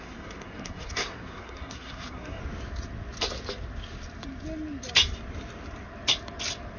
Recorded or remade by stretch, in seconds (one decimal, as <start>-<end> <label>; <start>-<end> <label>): 0.0-2.4 remade; 2.4-6.8 recorded